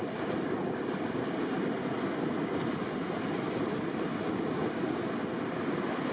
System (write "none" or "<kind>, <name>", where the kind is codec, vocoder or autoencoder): none